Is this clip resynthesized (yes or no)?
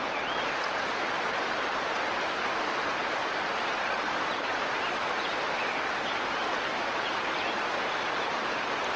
no